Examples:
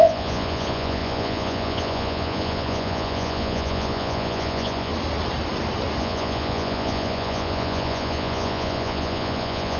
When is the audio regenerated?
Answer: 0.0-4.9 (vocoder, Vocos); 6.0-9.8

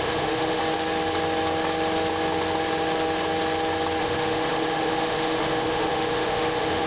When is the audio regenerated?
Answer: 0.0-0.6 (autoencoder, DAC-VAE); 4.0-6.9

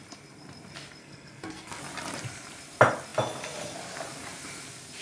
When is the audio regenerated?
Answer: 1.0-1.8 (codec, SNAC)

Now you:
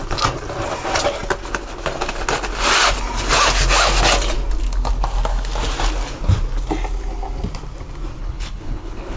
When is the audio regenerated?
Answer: 8.2-9.2 (codec, HILCodec)

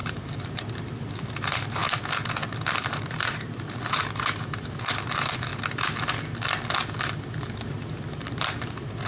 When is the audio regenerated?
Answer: 0.0-1.8 (vocoder, BigVGAN v2); 2.7-5.5; 7.4-9.1

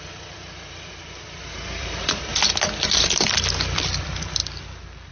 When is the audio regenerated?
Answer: 0.0-2.3 (vocoder, BigVGAN v2); 3.3-4.4

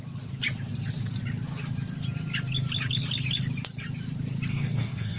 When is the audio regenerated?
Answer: 4.5-5.2 (codec, DAC)

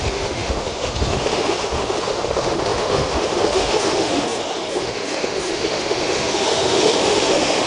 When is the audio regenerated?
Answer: 0.0-7.7 (autoencoder, DAC-VAE)